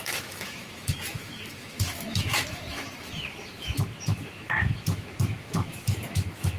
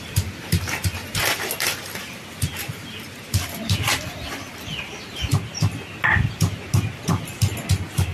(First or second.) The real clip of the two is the second